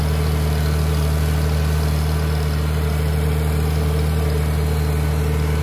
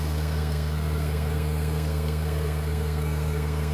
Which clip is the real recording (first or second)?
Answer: first